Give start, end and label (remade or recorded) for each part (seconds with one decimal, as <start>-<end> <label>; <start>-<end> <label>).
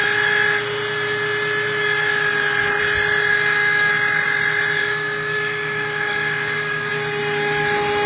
0.0-3.3 recorded; 3.3-3.9 remade; 3.9-4.8 recorded; 4.8-6.9 remade; 6.9-8.1 recorded